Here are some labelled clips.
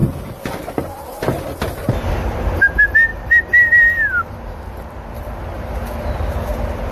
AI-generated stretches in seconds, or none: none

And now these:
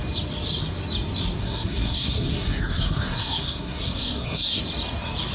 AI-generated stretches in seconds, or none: 1.4-4.6 (codec, SNAC)

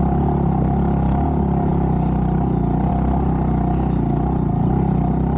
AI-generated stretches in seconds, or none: none

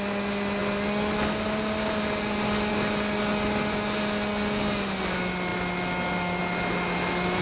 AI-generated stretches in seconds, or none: none

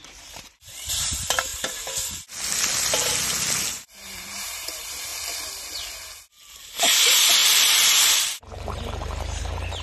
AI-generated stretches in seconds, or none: 0.0-1.5 (vocoder, BigVGAN v2); 3.7-5.1; 6.6-9.8